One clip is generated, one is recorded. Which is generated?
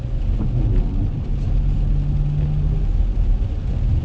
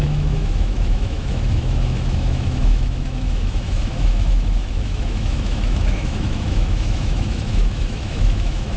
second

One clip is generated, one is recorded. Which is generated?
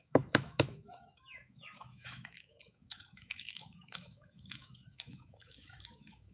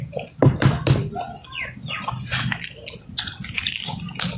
first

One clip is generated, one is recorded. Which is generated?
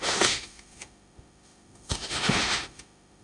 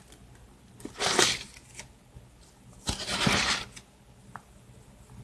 first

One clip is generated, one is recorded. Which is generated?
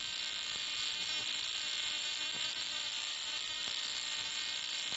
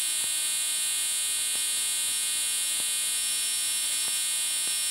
first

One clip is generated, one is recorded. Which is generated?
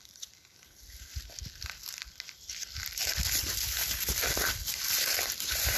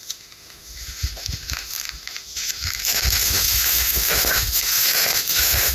second